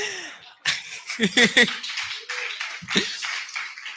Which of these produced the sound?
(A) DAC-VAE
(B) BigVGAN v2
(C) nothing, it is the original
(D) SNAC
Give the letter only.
C